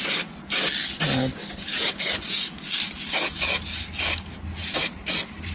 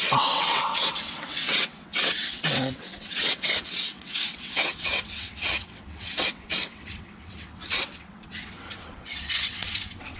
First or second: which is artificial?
second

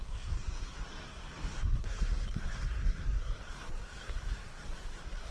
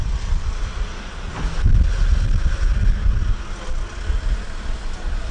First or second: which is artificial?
first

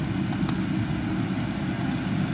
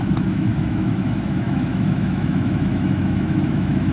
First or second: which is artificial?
second